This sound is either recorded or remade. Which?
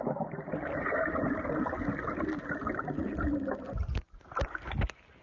recorded